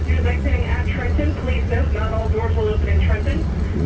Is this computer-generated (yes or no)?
yes